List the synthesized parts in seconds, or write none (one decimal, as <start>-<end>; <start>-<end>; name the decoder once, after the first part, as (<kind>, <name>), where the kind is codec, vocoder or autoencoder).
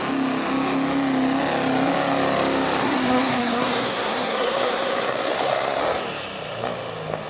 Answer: 2.8-5.8 (codec, SNAC)